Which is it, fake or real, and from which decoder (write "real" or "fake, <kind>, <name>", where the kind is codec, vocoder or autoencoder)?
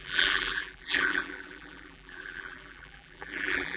fake, vocoder, BigVGAN v2